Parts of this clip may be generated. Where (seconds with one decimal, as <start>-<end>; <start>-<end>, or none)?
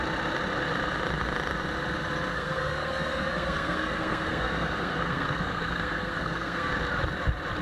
2.3-6.7